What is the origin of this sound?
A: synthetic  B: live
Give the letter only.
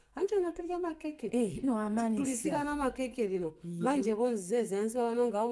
A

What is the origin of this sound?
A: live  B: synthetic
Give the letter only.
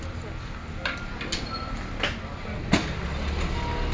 A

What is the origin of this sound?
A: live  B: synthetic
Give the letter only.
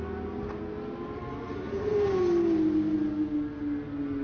A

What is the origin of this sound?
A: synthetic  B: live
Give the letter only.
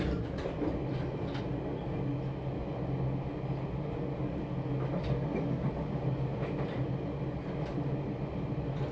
B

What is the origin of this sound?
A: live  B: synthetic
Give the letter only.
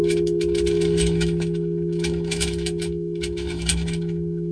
B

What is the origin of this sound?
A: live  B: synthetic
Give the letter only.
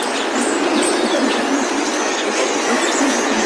B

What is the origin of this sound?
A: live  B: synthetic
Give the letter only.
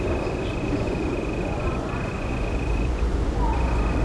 B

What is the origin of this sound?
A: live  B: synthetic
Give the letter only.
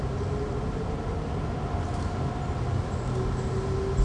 A